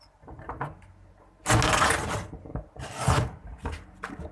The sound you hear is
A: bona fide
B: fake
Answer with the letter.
A